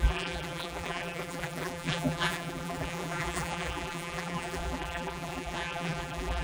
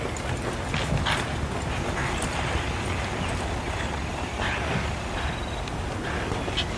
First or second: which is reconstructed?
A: first